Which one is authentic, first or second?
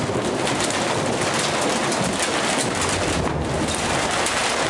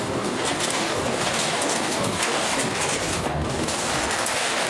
first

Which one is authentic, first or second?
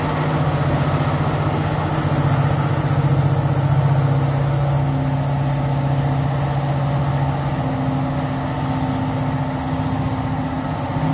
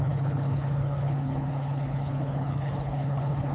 first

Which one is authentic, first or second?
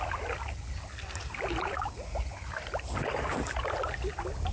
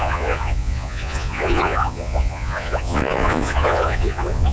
first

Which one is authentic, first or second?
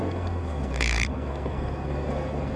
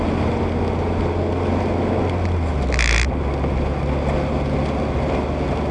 second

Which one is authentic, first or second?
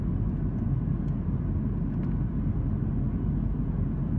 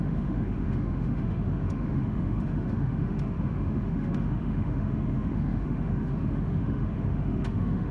first